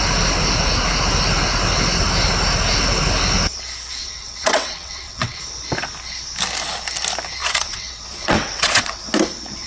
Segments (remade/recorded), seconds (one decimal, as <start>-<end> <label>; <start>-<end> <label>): 0.0-4.0 recorded; 4.0-5.4 remade; 5.4-7.4 recorded; 7.4-9.0 remade; 9.0-9.7 recorded